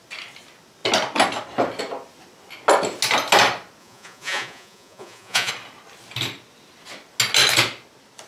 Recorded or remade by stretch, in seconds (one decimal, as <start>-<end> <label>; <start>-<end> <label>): 0.0-3.8 recorded; 3.8-5.5 remade; 5.5-8.3 recorded